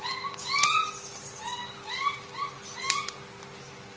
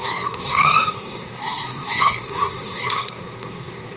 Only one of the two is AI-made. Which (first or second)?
second